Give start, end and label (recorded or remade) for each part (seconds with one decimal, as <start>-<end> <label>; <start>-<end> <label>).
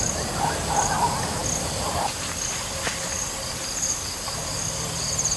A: 0.0-5.4 recorded